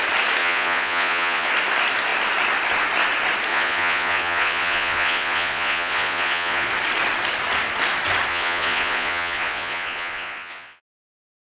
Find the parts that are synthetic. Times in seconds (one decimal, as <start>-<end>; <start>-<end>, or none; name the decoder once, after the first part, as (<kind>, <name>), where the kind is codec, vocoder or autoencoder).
0.4-1.5 (vocoder, Vocos); 3.5-6.7; 8.3-10.8